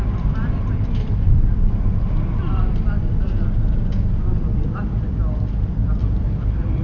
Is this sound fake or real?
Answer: fake